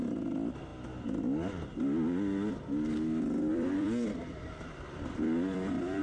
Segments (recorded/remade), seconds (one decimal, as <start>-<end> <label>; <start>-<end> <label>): 0.0-3.5 recorded; 3.5-6.0 remade